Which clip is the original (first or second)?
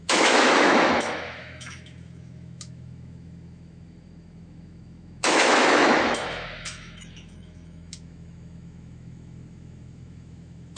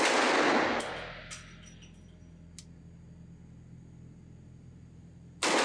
second